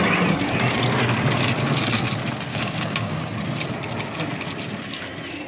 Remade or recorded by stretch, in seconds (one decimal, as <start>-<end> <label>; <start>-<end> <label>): 0.0-2.5 recorded; 2.5-3.2 remade; 3.2-5.5 recorded